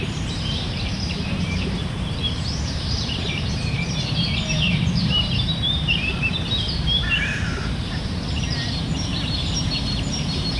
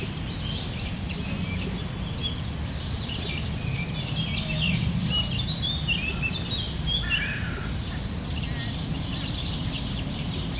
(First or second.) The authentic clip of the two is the second